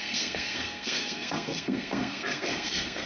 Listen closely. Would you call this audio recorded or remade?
remade